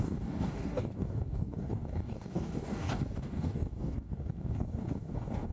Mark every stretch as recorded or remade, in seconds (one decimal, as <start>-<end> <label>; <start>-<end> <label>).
0.0-5.5 remade